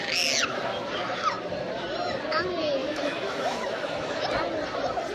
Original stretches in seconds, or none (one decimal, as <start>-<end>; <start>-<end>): 0.0-2.8; 4.2-5.1